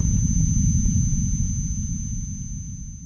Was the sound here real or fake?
real